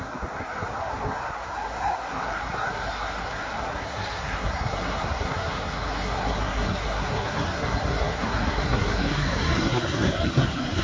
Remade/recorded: remade